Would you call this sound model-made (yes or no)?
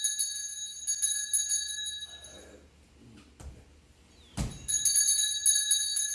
no